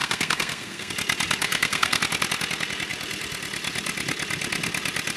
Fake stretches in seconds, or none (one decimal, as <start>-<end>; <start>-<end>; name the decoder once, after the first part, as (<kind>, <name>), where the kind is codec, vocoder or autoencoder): 0.0-0.9 (codec, SNAC); 1.4-2.0